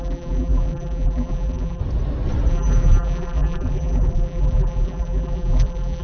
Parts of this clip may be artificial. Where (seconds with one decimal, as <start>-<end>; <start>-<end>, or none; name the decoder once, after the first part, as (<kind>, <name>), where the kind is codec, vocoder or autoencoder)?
0.0-1.8 (vocoder, BigVGAN v2); 2.5-6.0